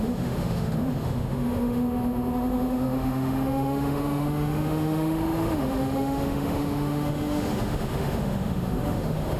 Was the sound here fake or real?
fake